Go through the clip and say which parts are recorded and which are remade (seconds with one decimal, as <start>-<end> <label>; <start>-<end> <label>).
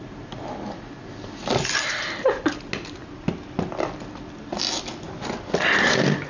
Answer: 0.0-6.3 recorded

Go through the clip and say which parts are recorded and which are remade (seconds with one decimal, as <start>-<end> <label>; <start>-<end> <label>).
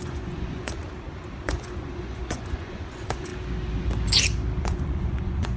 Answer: 0.0-0.8 remade; 0.8-1.4 recorded; 1.4-3.3 remade; 3.3-4.6 recorded; 4.6-5.6 remade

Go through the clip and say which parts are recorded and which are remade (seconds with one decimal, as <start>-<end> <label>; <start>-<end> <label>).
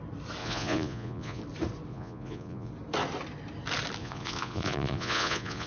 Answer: 0.0-0.4 recorded; 0.4-1.4 remade; 1.4-1.9 recorded; 1.9-2.7 remade; 2.7-4.0 recorded; 4.0-5.7 remade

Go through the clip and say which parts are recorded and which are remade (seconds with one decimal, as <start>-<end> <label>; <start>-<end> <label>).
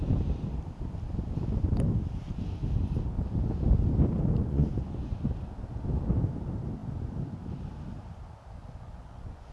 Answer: 0.0-4.4 recorded; 4.4-5.1 remade; 5.1-8.6 recorded; 8.6-9.5 remade